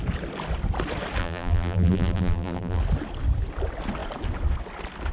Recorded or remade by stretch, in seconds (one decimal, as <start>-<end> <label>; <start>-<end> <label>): 0.0-1.2 recorded; 1.2-2.8 remade; 2.8-5.1 recorded